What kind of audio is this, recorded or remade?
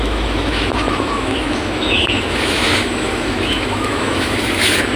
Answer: remade